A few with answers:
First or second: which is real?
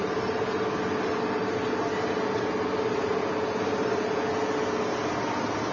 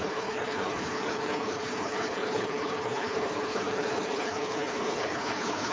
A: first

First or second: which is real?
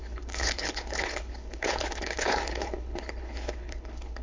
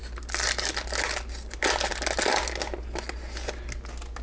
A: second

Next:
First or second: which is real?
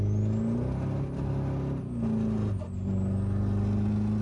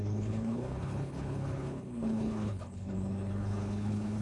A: first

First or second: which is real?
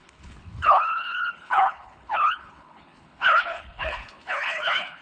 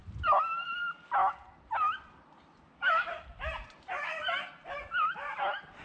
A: second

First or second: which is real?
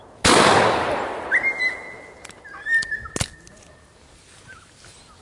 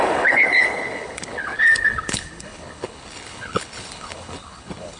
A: first